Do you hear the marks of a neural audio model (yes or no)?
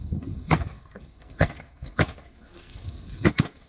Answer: yes